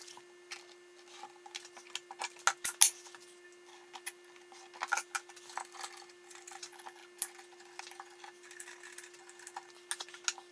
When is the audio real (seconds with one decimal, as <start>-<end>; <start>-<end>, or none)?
0.0-10.5